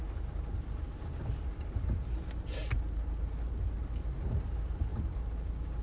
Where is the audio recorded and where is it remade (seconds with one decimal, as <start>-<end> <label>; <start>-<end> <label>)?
0.0-5.8 recorded